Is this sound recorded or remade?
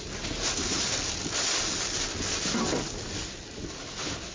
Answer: recorded